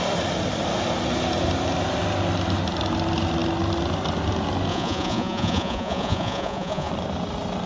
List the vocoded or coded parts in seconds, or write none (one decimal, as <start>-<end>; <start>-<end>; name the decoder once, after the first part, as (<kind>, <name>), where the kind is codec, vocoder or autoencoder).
4.7-6.9 (vocoder, Vocos)